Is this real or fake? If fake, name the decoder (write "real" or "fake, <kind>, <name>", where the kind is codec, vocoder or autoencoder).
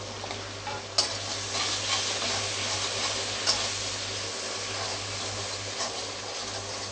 real